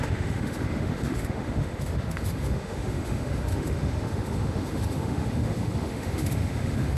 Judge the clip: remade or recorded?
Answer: remade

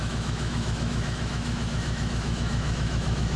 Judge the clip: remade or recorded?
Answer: remade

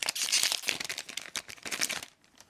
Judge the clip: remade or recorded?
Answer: recorded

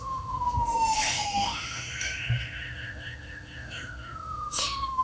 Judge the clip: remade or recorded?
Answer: remade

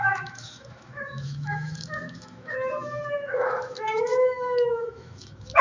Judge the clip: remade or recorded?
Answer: remade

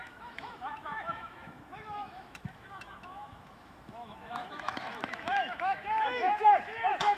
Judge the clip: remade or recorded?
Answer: remade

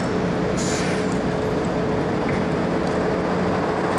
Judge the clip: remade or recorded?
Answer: recorded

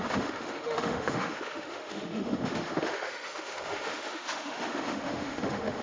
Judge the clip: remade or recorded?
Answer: remade